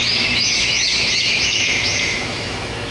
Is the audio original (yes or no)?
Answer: no